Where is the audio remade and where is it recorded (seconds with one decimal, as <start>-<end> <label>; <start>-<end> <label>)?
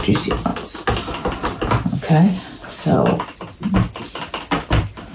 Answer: 0.0-5.1 recorded